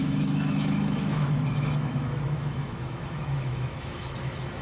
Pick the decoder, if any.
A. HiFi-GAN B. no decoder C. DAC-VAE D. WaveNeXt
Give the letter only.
C